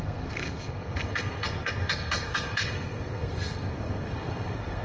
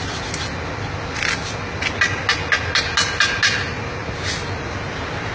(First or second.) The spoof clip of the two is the first